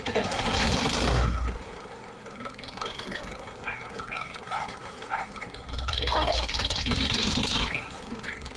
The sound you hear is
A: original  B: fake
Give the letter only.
B